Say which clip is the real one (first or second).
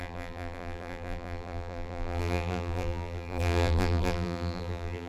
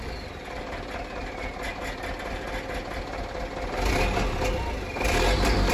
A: second